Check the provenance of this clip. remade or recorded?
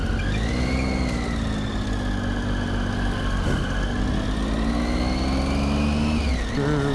recorded